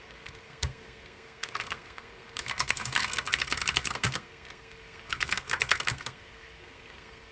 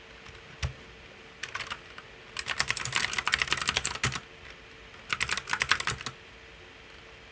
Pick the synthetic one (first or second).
first